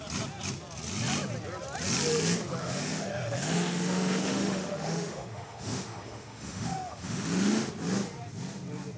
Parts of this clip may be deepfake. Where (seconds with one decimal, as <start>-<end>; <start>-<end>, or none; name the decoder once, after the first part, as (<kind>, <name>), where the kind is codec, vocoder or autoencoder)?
2.6-7.7 (autoencoder, DAC-VAE)